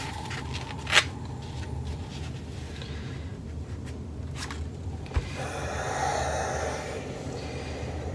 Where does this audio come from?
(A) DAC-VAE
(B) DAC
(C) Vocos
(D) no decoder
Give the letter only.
D